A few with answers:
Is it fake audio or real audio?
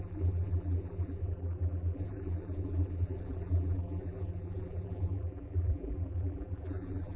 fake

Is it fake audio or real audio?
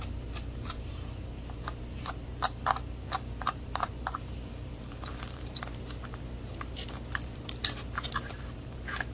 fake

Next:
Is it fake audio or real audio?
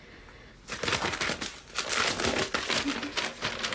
real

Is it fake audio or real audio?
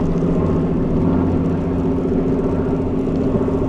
real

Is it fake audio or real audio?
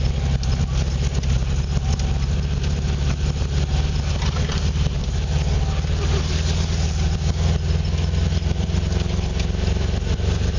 real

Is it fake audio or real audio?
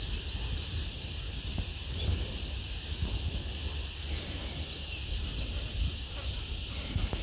real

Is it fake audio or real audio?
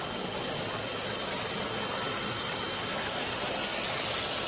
real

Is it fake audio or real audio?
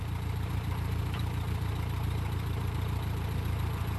fake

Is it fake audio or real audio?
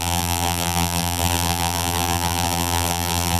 fake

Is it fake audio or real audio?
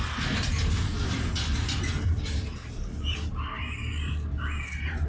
real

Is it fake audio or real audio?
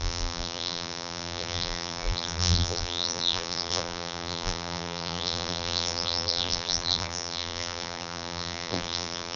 fake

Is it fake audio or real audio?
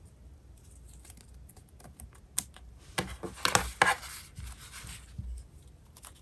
real